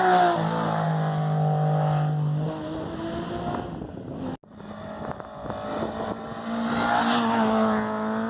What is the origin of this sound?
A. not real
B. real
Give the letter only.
B